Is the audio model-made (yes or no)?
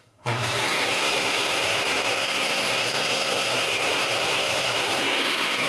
yes